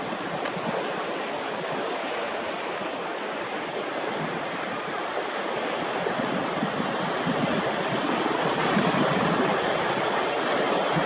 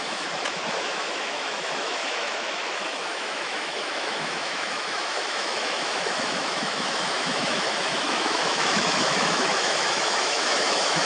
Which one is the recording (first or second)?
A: first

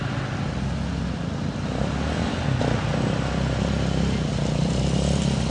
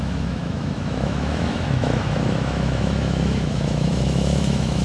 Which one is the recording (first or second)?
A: first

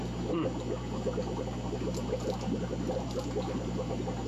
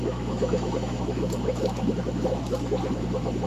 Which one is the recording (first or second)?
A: first